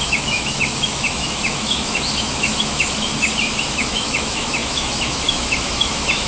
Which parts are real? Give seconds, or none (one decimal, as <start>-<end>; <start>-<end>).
3.1-3.7